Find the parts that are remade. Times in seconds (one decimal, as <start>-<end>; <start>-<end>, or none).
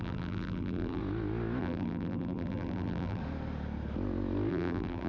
0.0-1.0; 1.6-3.2; 4.5-5.1